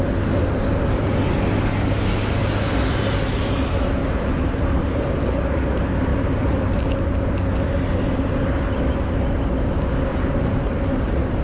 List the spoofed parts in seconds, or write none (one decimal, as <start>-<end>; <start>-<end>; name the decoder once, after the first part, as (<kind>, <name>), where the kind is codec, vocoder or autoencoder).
4.0-5.2 (vocoder, BigVGAN v2); 6.1-6.9; 10.1-10.8